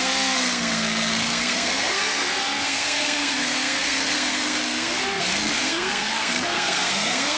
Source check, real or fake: fake